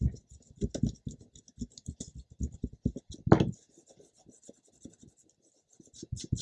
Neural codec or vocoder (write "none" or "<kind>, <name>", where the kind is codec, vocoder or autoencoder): none